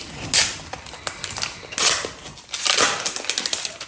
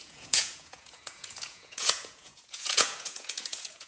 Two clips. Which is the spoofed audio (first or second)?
second